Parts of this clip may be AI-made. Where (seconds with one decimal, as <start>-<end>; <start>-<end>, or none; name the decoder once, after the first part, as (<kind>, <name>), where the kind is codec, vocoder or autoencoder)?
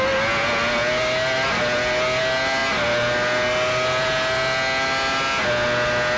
none